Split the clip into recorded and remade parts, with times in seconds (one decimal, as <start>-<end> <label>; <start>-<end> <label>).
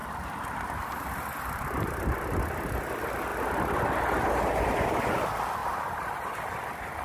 0.0-5.6 recorded; 5.6-6.4 remade; 6.4-7.0 recorded